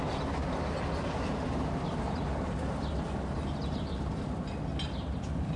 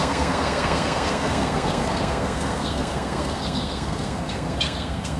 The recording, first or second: first